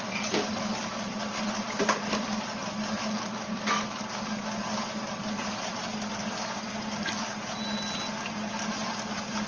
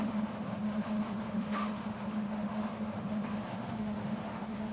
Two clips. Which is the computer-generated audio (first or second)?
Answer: second